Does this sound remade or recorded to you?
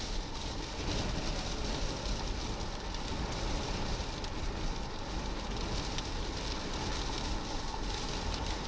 recorded